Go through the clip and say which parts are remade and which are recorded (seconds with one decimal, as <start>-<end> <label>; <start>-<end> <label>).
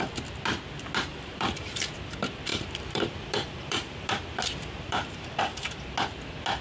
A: 0.0-1.1 recorded; 1.1-1.9 remade; 1.9-2.5 recorded; 2.5-5.4 remade; 5.4-6.6 recorded